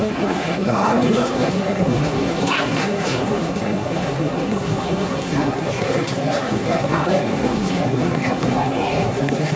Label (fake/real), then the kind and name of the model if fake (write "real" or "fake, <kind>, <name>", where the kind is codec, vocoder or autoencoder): fake, codec, SNAC